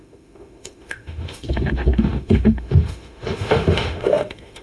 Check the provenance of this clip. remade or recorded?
remade